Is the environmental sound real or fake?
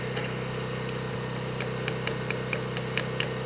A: real